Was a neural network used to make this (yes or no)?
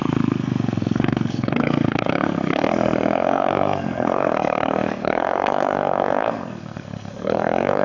yes